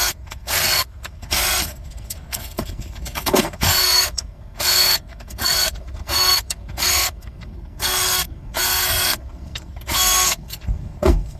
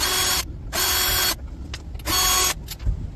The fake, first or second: first